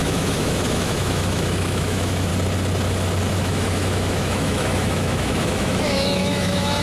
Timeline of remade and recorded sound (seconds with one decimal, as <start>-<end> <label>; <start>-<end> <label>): 0.0-2.3 remade; 2.3-3.3 recorded; 3.3-6.8 remade